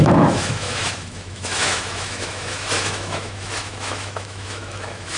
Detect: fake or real fake